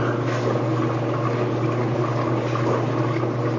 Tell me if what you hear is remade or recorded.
recorded